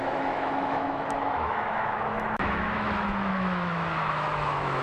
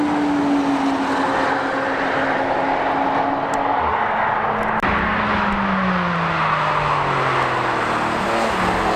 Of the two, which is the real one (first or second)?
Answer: second